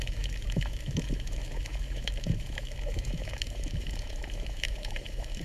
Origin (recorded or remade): remade